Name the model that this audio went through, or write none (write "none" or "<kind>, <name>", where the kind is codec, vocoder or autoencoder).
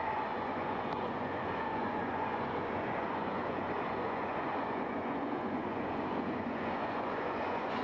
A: vocoder, Vocos